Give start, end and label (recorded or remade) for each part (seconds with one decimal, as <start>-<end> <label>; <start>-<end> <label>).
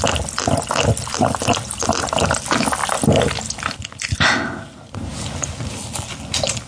0.0-6.7 recorded